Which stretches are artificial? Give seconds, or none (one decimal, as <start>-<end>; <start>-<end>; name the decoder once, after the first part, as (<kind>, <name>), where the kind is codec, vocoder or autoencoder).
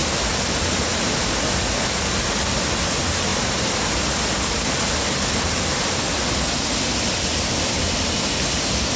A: none